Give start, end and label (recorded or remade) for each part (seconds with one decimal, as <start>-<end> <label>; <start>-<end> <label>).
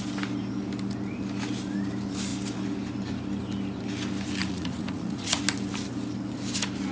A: 0.0-4.4 recorded; 4.4-5.4 remade; 5.4-6.9 recorded